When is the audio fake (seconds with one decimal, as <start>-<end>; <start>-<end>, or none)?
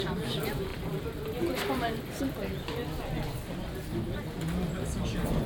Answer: 0.0-2.8